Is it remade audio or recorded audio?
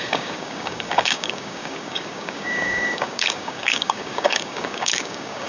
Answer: remade